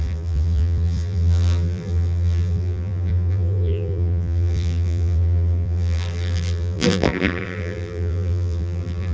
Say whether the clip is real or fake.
fake